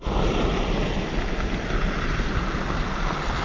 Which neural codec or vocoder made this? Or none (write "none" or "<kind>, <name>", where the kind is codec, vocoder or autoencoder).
none